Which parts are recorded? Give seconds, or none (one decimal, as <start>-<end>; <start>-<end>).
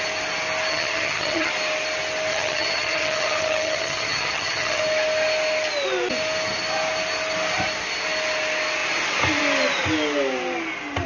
0.0-0.7; 1.5-2.3; 4.8-11.1